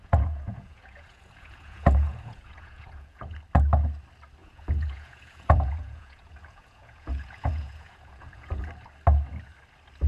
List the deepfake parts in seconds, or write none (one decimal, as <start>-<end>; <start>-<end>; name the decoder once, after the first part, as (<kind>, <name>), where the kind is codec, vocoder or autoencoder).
0.0-3.4 (vocoder, Vocos); 4.4-8.7